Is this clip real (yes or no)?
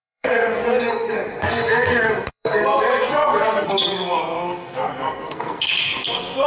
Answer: no